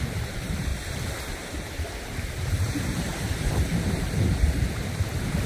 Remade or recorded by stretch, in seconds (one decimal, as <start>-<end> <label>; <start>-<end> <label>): 0.0-0.7 remade; 0.7-1.5 recorded; 1.5-5.5 remade